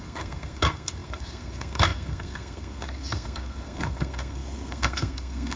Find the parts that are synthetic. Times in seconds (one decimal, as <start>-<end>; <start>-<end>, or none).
0.0-5.6